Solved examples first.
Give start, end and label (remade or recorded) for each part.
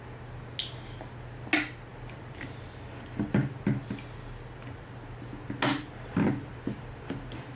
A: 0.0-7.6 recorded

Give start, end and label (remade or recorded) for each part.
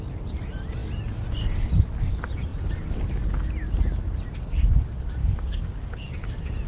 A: 0.0-5.2 recorded; 5.2-6.2 remade; 6.2-6.7 recorded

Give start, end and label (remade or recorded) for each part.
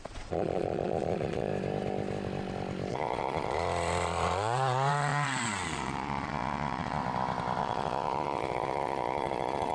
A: 0.0-1.5 remade; 1.5-2.9 recorded; 2.9-7.0 remade; 7.0-7.6 recorded; 7.6-9.7 remade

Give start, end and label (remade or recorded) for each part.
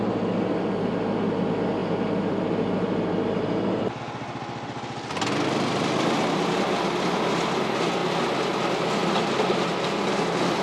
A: 0.0-1.8 recorded; 1.8-4.0 remade; 4.0-10.6 recorded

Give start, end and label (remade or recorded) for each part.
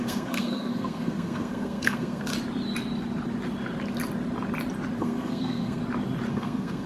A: 0.0-2.3 remade; 2.3-5.0 recorded; 5.0-5.8 remade; 5.8-6.3 recorded; 6.3-6.9 remade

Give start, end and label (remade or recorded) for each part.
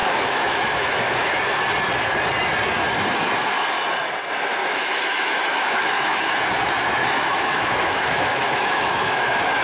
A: 0.0-1.3 remade; 1.3-4.6 recorded; 4.6-6.4 remade; 6.4-7.0 recorded; 7.0-9.6 remade